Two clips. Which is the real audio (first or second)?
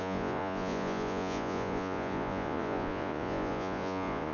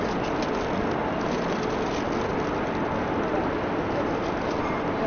second